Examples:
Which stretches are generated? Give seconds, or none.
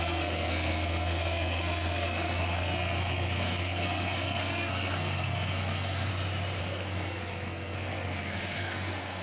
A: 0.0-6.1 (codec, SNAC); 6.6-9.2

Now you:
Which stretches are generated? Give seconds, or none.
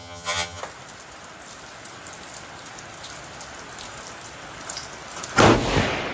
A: 0.0-0.6 (vocoder, HiFi-GAN)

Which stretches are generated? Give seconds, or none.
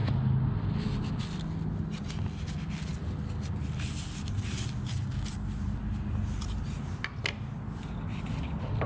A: none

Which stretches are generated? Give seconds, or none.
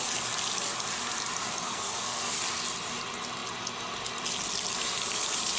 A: 1.6-2.4 (codec, SNAC)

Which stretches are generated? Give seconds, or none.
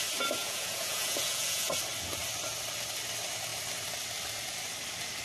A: 0.4-1.7 (vocoder, Vocos)